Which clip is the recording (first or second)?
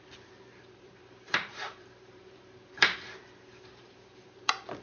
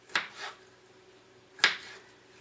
second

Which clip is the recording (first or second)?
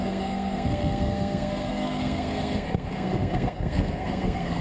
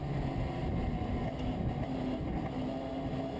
second